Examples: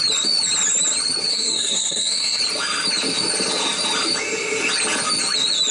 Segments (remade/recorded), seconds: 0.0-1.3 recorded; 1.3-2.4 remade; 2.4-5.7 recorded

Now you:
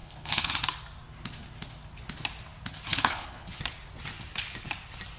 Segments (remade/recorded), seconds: 0.0-0.5 remade; 0.5-2.9 recorded; 2.9-3.6 remade; 3.6-5.2 recorded

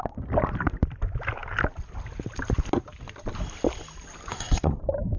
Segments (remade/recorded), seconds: 0.0-4.3 recorded; 4.3-4.8 remade; 4.8-5.2 recorded

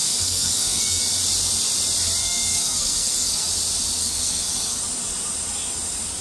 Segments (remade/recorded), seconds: 0.0-1.0 remade; 1.0-2.2 recorded; 2.2-3.5 remade; 3.5-4.0 recorded; 4.0-4.8 remade; 4.8-6.2 recorded

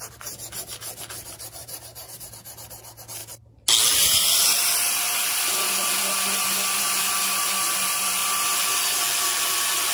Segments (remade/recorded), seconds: 0.0-1.6 recorded; 1.6-2.3 remade; 2.3-9.9 recorded

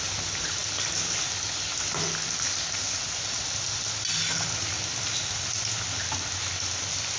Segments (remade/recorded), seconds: 0.0-7.2 recorded

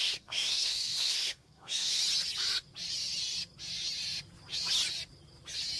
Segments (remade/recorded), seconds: 0.0-2.0 remade; 2.0-5.8 recorded

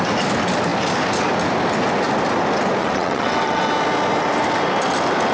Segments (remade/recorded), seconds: 0.0-2.8 recorded; 2.8-3.6 remade; 3.6-5.3 recorded